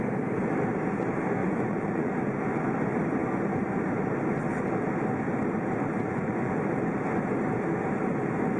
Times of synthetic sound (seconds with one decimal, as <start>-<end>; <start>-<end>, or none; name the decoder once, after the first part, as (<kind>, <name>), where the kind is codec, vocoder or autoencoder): 1.4-2.1 (vocoder, Vocos); 6.0-6.5